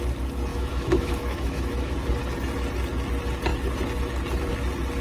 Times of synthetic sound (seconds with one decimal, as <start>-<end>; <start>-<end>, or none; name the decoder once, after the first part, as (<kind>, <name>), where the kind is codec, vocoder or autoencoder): 0.5-1.9 (autoencoder, DAC-VAE)